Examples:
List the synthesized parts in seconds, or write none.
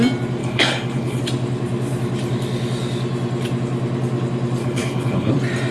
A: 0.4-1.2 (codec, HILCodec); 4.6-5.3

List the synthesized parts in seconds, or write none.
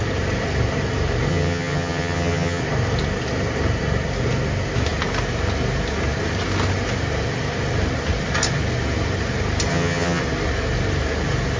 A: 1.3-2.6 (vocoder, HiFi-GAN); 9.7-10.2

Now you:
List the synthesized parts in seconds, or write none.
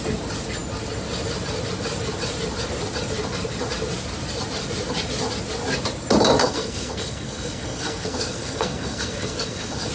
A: 6.4-9.9 (codec, SNAC)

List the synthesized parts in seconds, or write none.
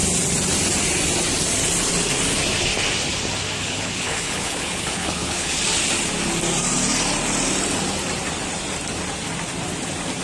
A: 3.6-5.5 (codec, HILCodec)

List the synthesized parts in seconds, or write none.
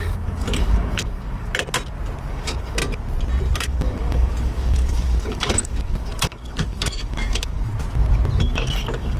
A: 0.0-1.5 (codec, DAC); 2.3-2.8; 3.6-7.7; 8.4-9.2